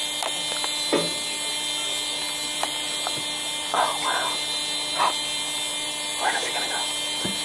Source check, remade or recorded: recorded